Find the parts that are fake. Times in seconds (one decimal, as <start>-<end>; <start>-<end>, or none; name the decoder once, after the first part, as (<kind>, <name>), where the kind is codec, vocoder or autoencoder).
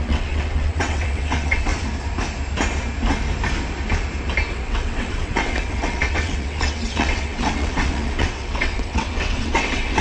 0.0-1.7 (vocoder, WaveNeXt); 4.5-10.0